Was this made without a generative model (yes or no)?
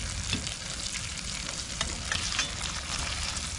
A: no